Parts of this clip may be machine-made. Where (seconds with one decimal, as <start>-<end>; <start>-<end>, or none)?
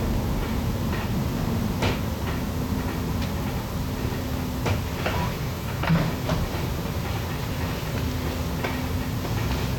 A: 5.4-6.1